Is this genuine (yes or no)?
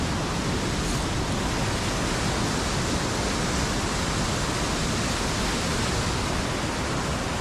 yes